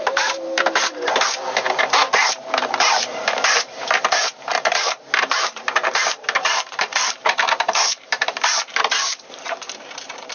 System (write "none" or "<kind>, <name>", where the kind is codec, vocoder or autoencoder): vocoder, BigVGAN v2